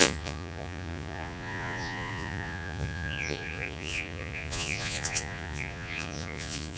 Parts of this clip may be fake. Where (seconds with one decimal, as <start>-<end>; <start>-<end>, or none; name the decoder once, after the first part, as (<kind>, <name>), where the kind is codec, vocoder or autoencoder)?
0.0-6.8 (vocoder, Vocos)